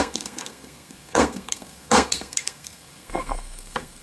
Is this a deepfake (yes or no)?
yes